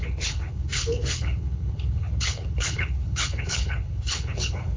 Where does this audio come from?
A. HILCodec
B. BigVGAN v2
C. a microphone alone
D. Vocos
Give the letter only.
A